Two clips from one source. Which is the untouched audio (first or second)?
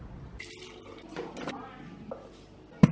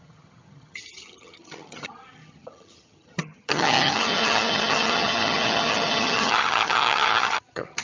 first